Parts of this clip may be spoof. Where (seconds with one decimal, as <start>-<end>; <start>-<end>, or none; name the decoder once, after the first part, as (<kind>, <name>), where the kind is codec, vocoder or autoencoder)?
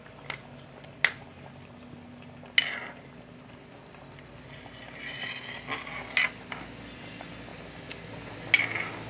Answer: none